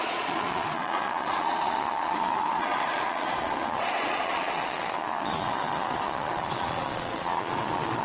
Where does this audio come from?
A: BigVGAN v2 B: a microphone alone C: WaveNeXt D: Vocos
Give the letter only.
D